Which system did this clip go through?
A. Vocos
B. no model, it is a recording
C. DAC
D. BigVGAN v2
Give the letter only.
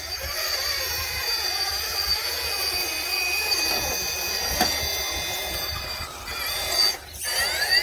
B